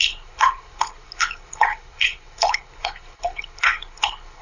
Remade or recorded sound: remade